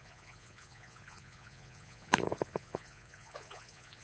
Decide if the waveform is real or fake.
fake